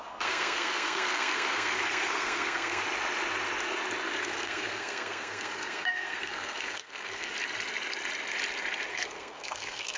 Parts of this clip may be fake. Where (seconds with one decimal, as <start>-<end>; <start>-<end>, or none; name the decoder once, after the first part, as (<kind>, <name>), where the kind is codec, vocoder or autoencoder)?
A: 0.0-2.8 (codec, SNAC); 4.2-7.3; 8.9-10.0